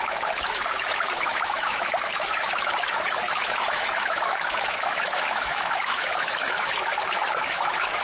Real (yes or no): no